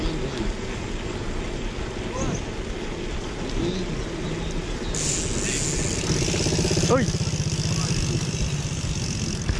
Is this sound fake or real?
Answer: real